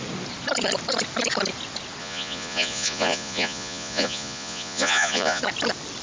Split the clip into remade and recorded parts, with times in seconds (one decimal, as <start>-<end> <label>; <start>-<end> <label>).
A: 0.0-2.0 recorded; 2.0-5.4 remade; 5.4-6.0 recorded